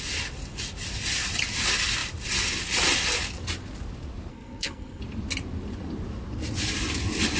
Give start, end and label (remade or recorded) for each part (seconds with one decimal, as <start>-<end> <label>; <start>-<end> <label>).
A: 0.0-4.3 recorded; 4.3-5.0 remade; 5.0-7.4 recorded